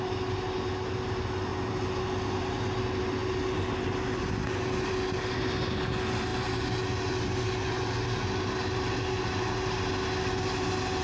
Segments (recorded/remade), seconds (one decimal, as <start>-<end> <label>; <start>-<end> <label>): 0.0-11.0 recorded